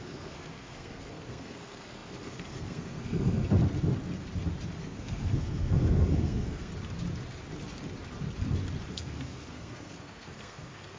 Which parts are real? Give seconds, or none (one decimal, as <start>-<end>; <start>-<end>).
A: 3.6-4.8; 6.7-8.9